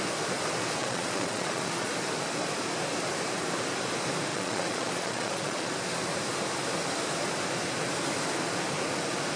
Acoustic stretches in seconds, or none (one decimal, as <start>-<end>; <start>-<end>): 0.0-0.8; 1.9-4.3; 5.7-9.4